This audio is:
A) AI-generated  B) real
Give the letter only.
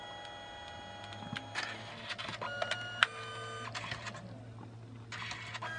B